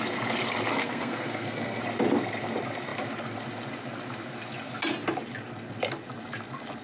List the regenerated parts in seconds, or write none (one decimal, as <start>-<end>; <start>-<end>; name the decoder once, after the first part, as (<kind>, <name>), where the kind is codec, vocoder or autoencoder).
0.7-1.8 (codec, SNAC)